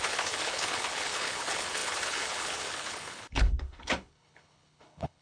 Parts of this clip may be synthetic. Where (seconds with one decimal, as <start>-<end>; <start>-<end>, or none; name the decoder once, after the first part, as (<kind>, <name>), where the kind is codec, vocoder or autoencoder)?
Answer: 0.0-5.2 (codec, HILCodec)